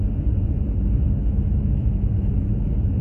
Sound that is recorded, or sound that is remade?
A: recorded